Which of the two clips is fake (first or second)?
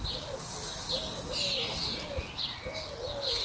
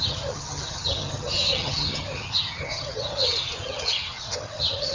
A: second